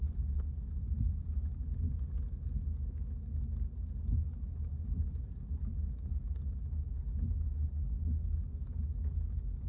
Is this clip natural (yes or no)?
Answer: yes